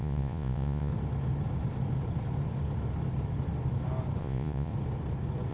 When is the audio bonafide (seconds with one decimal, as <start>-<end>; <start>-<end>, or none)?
0.9-4.2; 4.7-5.5